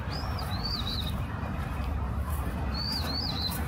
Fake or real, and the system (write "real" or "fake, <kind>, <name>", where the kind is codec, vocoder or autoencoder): fake, vocoder, BigVGAN v2